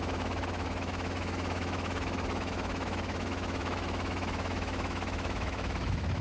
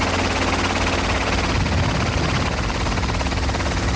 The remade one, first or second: first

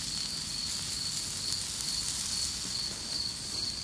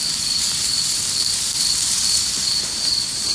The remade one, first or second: second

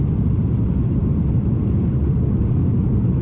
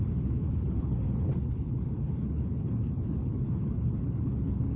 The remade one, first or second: second